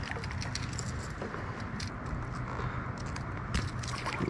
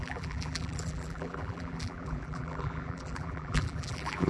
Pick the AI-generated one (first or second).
second